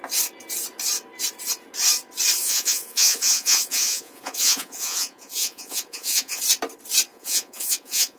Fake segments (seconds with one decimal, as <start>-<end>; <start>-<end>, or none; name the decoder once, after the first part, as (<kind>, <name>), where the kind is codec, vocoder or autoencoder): 2.4-6.4 (vocoder, Vocos); 7.1-8.2